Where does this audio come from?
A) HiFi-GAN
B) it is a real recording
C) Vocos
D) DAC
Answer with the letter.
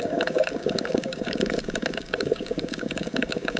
D